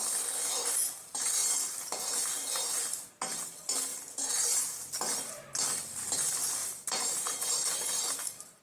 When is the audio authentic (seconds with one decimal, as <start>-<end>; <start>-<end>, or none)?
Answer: 0.0-1.4; 3.1-3.9; 4.6-6.6